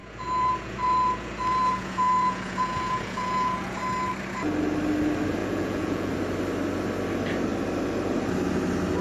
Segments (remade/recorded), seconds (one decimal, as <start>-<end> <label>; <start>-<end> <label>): 0.0-3.8 remade; 3.8-5.4 recorded; 5.4-6.1 remade; 6.1-9.0 recorded